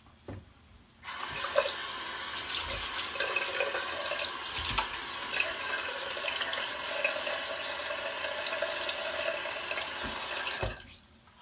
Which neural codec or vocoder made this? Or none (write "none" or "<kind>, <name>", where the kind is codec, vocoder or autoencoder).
none